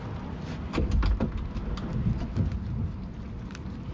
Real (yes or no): yes